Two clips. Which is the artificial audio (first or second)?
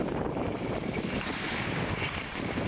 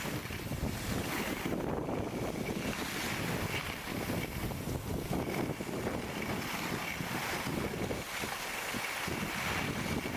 first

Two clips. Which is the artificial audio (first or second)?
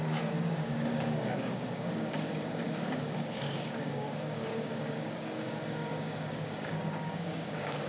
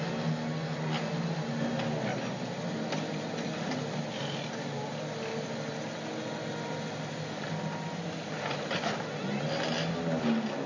first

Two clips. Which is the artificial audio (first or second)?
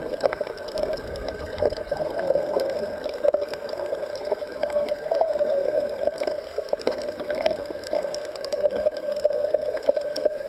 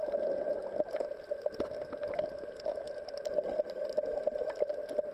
first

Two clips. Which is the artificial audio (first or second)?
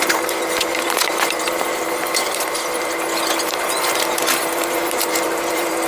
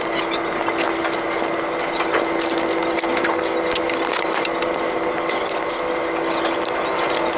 first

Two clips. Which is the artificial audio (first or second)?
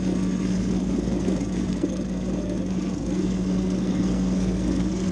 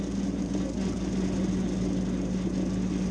first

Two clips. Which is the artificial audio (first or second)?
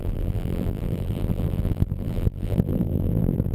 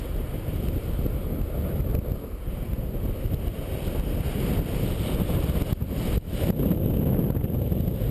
first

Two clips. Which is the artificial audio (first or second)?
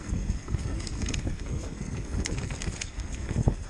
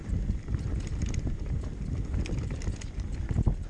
first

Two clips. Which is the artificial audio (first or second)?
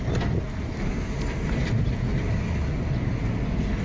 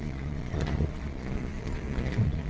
second